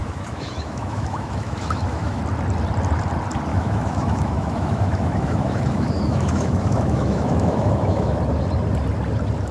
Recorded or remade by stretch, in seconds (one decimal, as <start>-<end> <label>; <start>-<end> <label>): 0.0-2.2 remade; 2.2-3.5 recorded; 3.5-8.2 remade; 8.2-9.5 recorded